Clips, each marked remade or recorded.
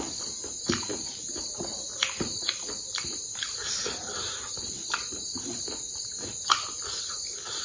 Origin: recorded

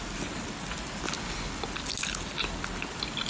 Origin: recorded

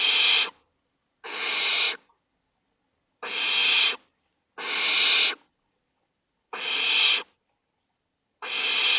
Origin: recorded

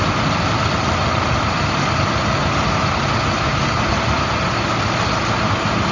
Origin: recorded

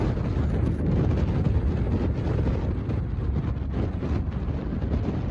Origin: recorded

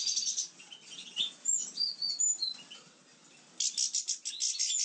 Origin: recorded